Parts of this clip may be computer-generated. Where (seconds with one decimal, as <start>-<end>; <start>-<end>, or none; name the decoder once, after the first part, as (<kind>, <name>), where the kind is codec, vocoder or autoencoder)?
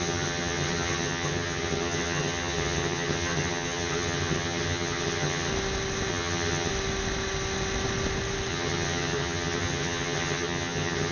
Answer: 0.0-5.5 (vocoder, HiFi-GAN); 6.1-6.7; 8.5-11.1